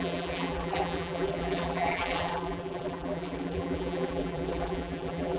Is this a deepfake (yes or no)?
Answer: yes